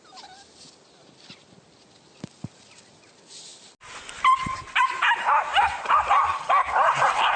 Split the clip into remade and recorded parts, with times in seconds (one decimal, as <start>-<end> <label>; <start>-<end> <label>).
0.0-5.5 recorded; 5.5-6.2 remade; 6.2-7.4 recorded